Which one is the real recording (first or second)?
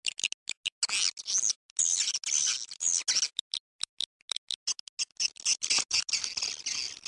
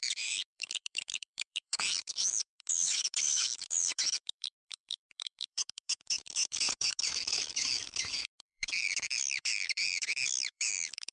first